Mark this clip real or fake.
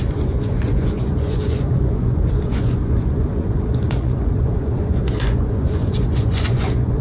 fake